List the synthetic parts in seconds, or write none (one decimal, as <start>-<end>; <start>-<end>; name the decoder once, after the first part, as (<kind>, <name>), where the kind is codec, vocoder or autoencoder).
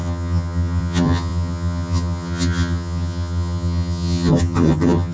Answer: 0.0-5.1 (vocoder, HiFi-GAN)